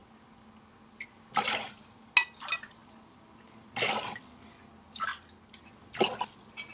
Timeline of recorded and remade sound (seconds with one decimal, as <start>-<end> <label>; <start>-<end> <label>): 0.0-6.7 recorded